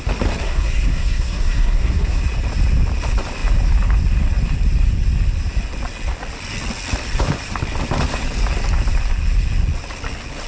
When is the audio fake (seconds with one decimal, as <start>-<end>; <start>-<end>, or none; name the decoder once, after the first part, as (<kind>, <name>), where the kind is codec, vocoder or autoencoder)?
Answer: 0.4-2.2 (codec, SNAC)